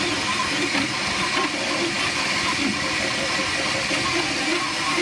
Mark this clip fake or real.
real